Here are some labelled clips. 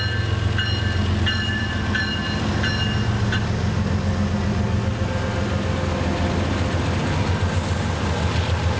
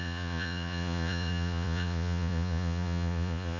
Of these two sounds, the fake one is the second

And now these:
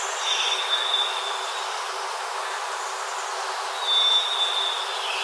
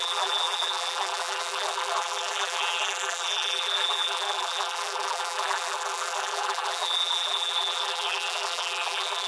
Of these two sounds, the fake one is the second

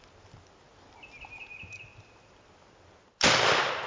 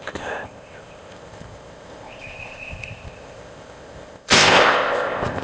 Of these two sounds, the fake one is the second